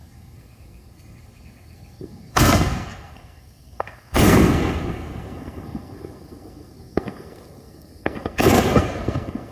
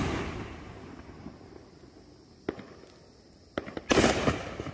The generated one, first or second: first